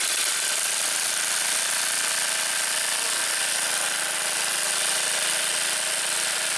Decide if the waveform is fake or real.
real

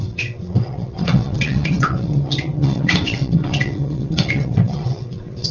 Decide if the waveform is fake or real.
fake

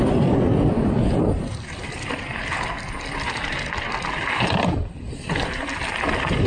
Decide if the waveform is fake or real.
real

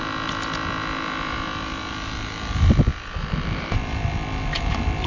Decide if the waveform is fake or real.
real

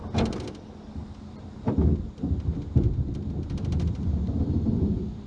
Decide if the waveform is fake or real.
real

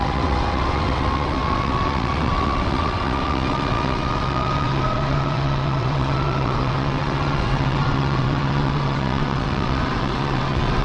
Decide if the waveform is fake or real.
fake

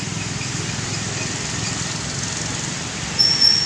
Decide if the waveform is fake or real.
real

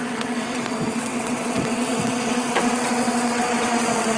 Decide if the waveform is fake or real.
fake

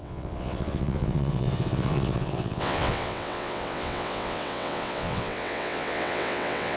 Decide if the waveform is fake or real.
fake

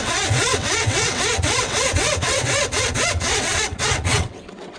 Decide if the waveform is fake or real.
fake